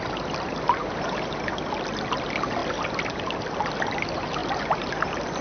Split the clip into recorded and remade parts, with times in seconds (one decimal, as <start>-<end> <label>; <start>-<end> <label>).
0.0-5.4 recorded